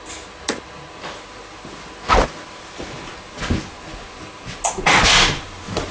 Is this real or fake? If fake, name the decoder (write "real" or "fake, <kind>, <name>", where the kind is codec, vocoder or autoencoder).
real